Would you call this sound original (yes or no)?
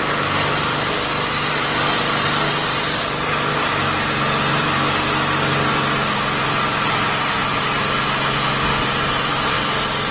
yes